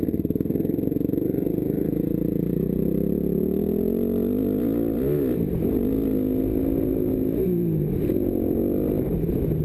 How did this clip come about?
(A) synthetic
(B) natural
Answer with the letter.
B